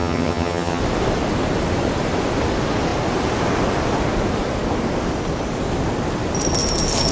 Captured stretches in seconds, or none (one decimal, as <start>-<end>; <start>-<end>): 0.8-7.1